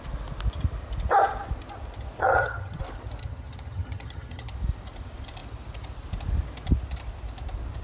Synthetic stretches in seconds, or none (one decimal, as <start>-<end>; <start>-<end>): 2.2-2.8; 3.2-4.5